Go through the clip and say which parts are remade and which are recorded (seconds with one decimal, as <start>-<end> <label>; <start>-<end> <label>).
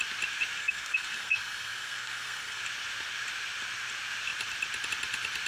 0.0-0.6 recorded; 0.6-2.6 remade; 2.6-5.5 recorded